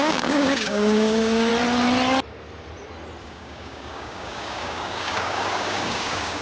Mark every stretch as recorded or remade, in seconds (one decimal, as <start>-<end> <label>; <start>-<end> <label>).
0.0-1.5 remade; 1.5-3.2 recorded; 3.2-6.4 remade